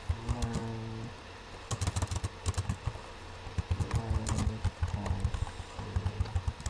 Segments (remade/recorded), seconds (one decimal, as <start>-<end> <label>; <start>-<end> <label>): 0.0-6.7 recorded